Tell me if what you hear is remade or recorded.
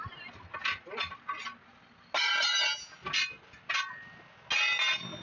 recorded